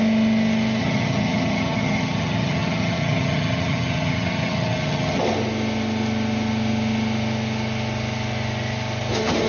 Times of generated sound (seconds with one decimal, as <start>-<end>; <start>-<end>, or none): 0.8-5.2